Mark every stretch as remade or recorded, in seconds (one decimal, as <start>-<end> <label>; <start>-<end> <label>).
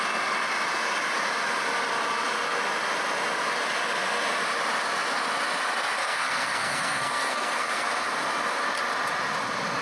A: 0.0-6.0 recorded; 6.0-7.9 remade; 7.9-9.8 recorded